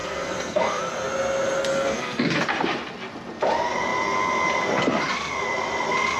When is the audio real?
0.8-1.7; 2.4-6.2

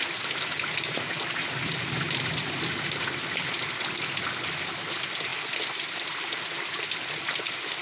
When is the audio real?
0.0-7.8

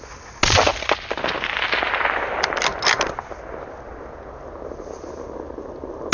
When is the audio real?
0.0-6.1

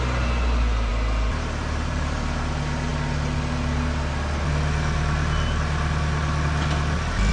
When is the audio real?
0.0-7.3

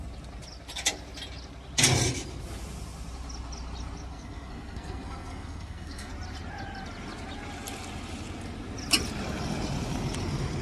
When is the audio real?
0.0-4.1; 6.1-10.6